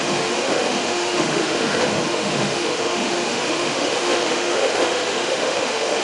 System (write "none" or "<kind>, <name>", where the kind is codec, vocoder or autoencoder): autoencoder, DAC-VAE